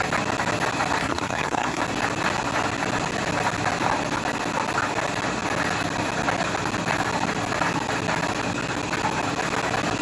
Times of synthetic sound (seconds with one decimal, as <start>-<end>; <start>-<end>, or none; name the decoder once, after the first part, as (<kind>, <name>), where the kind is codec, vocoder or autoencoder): 1.0-1.8 (codec, SNAC)